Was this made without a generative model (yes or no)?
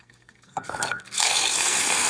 no